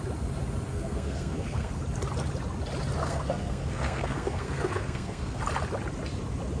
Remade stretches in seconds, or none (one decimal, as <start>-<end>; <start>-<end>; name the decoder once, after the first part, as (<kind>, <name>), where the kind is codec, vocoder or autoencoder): 0.7-1.7 (codec, SNAC); 3.0-5.4